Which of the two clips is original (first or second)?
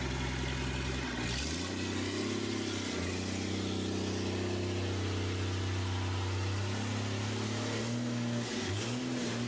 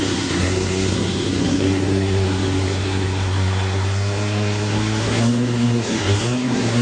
first